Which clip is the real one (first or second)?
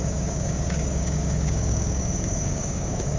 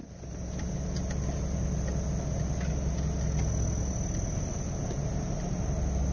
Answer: second